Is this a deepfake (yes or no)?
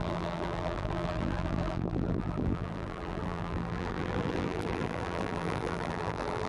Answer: yes